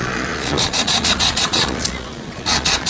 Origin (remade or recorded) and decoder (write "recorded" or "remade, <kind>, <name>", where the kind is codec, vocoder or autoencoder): remade, vocoder, Vocos